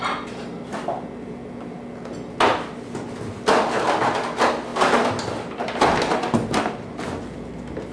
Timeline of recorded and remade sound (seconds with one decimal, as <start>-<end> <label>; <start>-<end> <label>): 0.0-7.9 recorded